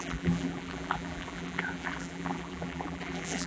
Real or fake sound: fake